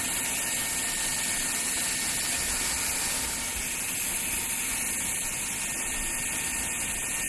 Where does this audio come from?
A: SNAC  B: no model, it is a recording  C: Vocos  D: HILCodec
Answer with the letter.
B